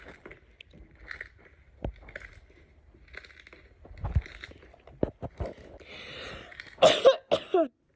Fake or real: real